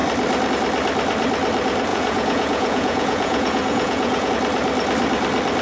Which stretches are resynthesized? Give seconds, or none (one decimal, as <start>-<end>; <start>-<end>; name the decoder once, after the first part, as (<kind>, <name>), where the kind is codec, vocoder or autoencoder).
1.9-4.3 (vocoder, Vocos)